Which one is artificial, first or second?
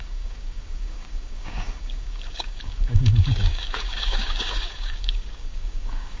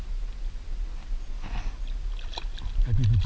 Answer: first